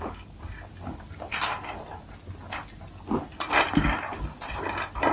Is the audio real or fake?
real